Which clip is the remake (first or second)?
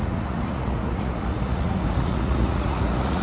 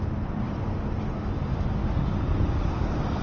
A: first